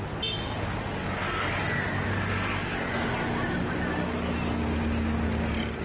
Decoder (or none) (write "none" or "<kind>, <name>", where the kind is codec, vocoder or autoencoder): none